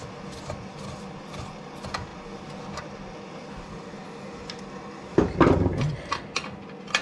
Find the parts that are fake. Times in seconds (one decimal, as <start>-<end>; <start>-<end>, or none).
none